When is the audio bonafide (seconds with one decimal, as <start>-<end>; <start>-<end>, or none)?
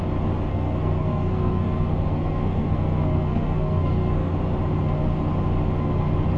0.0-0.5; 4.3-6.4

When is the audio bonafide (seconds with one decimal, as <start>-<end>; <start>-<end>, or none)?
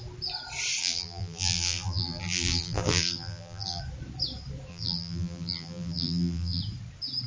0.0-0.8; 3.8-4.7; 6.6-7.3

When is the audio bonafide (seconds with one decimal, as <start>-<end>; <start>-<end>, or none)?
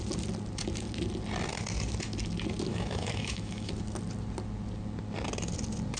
0.0-2.7; 3.7-6.0